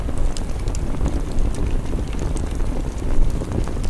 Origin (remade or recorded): recorded